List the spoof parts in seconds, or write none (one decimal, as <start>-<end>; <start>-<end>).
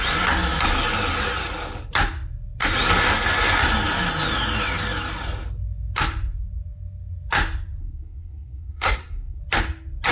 7.8-9.4